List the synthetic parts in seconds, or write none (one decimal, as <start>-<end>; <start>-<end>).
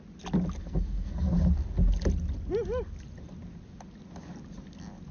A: 0.6-1.3